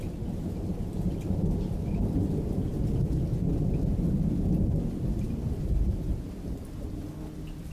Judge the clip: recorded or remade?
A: recorded